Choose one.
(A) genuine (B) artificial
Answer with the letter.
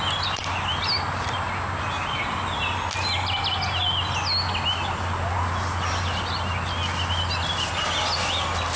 A